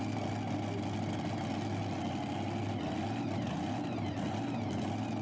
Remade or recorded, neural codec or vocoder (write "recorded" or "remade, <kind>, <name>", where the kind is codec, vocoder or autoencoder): recorded